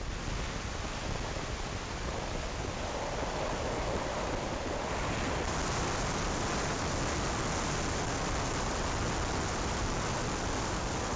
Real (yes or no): yes